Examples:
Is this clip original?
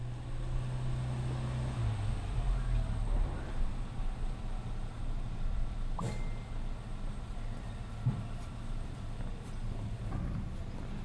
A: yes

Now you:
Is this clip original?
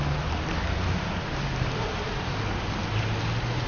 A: yes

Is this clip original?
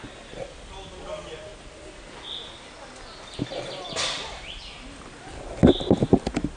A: yes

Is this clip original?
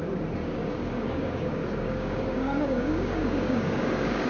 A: no